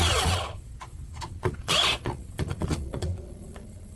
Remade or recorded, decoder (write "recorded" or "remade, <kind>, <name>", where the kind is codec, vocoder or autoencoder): remade, vocoder, Vocos